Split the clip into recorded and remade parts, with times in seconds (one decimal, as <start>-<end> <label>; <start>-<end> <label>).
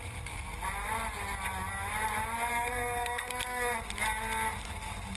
0.0-2.5 recorded; 2.5-3.8 remade; 3.8-5.2 recorded